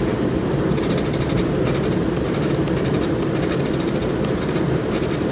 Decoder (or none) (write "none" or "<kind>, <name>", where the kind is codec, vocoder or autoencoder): none